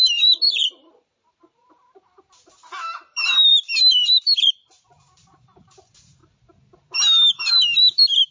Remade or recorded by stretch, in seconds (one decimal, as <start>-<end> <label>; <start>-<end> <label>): 0.0-6.2 remade; 6.2-7.3 recorded; 7.3-8.3 remade